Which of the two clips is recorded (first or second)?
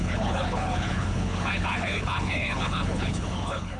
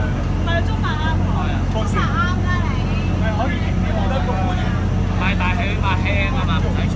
second